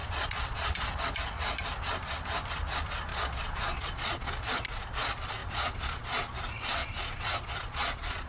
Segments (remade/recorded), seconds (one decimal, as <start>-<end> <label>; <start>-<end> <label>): 0.0-1.0 remade; 1.0-3.1 recorded; 3.1-4.4 remade; 4.4-5.4 recorded; 5.4-6.3 remade; 6.3-6.8 recorded; 6.8-8.3 remade